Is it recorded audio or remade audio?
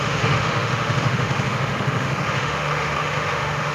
remade